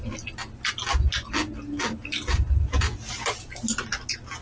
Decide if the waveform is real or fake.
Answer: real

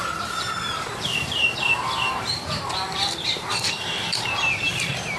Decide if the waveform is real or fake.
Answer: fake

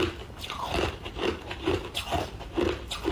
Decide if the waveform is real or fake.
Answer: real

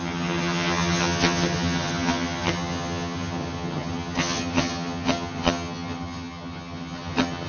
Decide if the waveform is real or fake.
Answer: fake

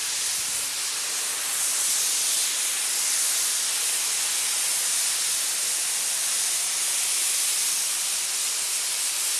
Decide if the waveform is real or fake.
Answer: real